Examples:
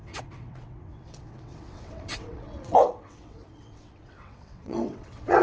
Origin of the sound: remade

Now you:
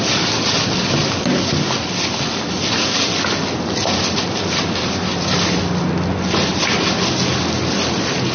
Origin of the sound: recorded